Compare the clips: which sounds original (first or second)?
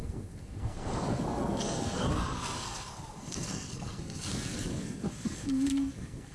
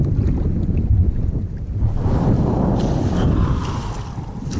second